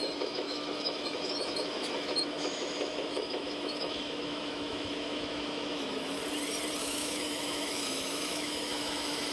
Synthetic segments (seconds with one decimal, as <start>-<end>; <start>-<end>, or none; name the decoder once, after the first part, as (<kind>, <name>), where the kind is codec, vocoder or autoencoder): 0.0-6.2 (autoencoder, DAC-VAE); 6.8-9.3